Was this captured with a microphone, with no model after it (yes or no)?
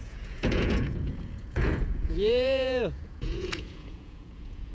no